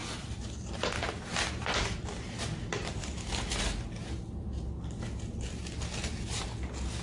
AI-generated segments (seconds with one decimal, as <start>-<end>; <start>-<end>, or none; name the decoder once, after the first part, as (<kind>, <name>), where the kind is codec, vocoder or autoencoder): 0.0-0.9 (vocoder, BigVGAN v2)